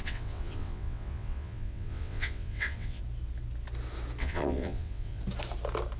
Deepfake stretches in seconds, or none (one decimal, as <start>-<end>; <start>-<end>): 0.0-3.0; 4.2-5.2